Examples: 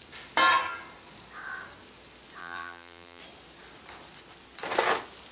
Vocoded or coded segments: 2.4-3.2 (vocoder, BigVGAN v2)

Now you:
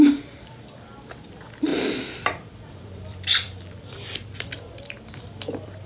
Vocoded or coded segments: 0.0-5.9 (vocoder, BigVGAN v2)

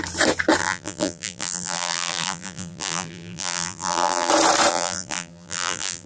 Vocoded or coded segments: 0.6-4.3 (vocoder, BigVGAN v2); 4.7-6.1

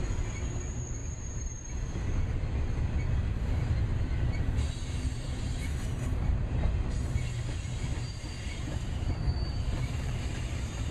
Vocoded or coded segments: 1.0-1.7 (vocoder, BigVGAN v2); 3.9-6.6; 7.9-10.9

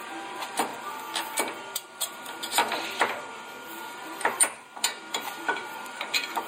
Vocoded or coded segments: 0.0-0.7 (vocoder, BigVGAN v2); 1.9-2.6; 3.7-6.5